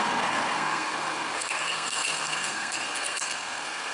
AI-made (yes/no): yes